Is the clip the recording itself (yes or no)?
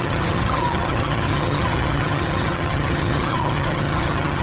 no